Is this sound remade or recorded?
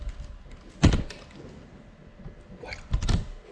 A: recorded